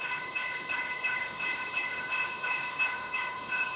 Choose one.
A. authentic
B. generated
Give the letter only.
B